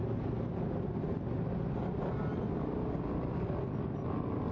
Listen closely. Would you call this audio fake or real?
real